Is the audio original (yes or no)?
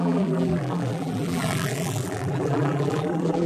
no